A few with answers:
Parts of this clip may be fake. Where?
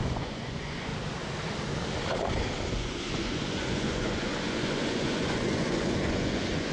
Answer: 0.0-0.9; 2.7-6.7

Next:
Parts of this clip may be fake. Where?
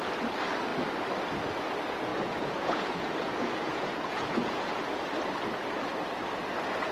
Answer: 2.1-4.8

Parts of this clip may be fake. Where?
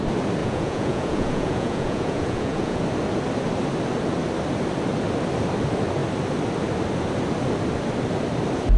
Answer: 0.4-2.8